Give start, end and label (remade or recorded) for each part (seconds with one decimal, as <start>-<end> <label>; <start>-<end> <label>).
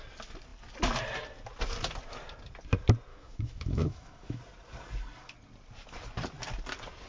0.0-3.1 recorded; 3.1-4.4 remade; 4.4-7.1 recorded